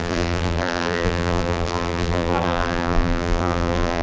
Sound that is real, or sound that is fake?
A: fake